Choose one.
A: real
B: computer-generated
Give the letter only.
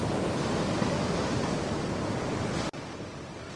A